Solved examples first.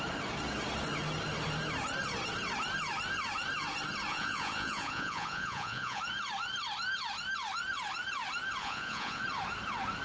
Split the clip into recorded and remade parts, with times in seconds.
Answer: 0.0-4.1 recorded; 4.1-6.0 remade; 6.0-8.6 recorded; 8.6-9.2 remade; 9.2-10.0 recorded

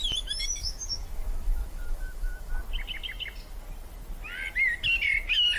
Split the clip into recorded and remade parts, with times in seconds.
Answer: 0.0-0.6 recorded; 0.6-2.5 remade; 2.5-5.6 recorded

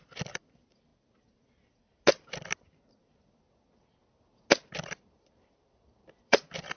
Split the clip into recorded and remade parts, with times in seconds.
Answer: 0.0-0.9 remade; 0.9-5.0 recorded; 5.0-6.8 remade

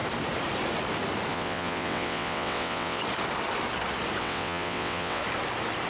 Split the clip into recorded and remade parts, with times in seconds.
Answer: 0.0-1.3 recorded; 1.3-3.0 remade; 3.0-4.2 recorded; 4.2-5.2 remade; 5.2-5.9 recorded

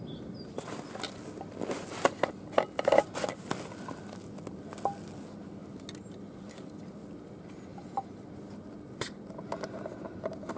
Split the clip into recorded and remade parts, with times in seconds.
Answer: 0.0-10.6 recorded

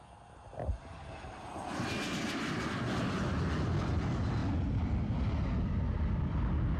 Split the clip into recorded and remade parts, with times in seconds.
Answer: 0.0-6.8 recorded

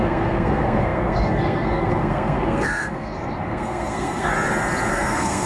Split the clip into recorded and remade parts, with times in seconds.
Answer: 0.0-4.3 remade; 4.3-4.9 recorded; 4.9-5.5 remade

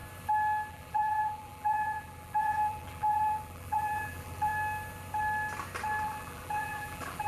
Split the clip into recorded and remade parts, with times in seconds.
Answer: 0.0-0.7 recorded; 0.7-4.5 remade; 4.5-6.0 recorded; 6.0-7.3 remade